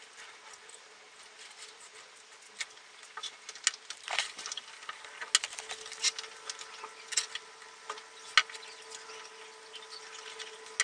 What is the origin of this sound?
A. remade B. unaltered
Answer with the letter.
B